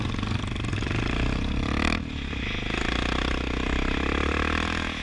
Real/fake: real